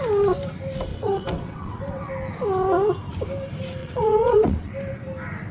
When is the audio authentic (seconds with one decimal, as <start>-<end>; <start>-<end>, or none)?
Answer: 0.0-0.9; 2.1-3.8; 4.7-5.5